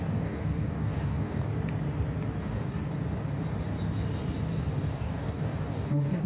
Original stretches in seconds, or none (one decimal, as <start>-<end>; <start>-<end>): 1.5-2.4; 2.8-4.7